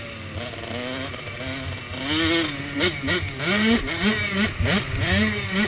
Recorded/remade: recorded